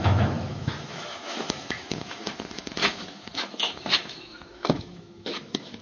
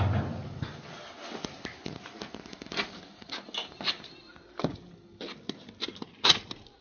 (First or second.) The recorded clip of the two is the second